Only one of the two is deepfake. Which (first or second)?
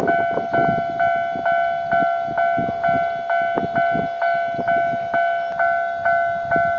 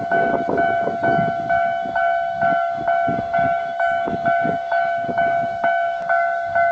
second